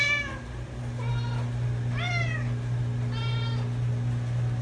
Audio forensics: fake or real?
real